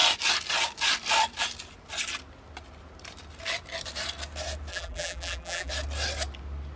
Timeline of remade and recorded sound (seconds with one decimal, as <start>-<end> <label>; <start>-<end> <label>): 0.0-4.7 recorded; 4.7-5.7 remade; 5.7-6.8 recorded